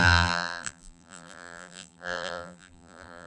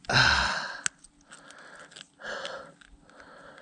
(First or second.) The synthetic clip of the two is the first